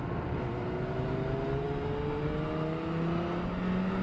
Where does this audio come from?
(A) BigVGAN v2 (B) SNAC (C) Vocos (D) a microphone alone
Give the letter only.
D